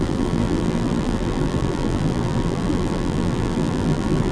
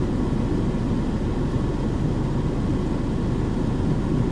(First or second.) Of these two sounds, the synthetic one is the first